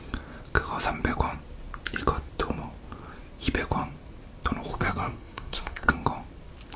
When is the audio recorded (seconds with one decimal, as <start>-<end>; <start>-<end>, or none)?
0.0-4.7; 5.9-6.8